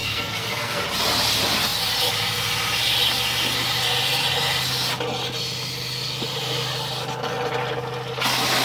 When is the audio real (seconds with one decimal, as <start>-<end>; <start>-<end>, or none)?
0.8-8.6